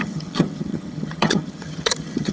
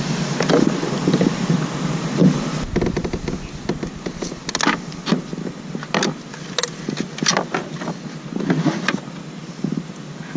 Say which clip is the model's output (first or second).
first